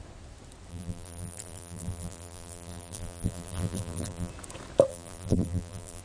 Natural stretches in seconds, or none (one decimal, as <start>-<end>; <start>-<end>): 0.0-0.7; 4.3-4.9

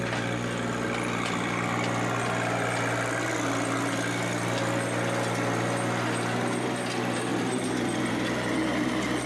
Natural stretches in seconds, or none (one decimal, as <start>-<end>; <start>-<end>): 0.0-7.3; 8.9-9.3

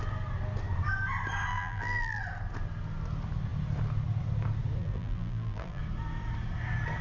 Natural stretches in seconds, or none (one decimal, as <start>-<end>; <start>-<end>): 0.0-1.5; 2.2-4.8; 5.8-7.0